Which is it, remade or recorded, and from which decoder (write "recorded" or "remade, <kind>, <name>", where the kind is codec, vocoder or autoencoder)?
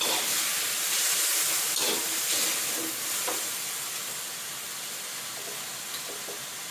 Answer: recorded